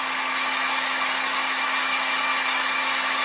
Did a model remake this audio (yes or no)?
yes